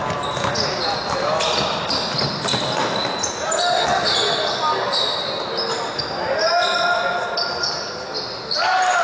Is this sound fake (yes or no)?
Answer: no